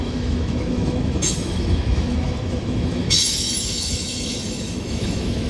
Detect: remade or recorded remade